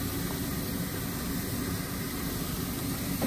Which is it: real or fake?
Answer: real